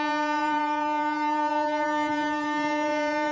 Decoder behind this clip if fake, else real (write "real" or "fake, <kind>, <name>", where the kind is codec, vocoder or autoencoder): fake, vocoder, Vocos